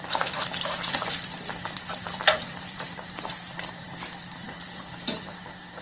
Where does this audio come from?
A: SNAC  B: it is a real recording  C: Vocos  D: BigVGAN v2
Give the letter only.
D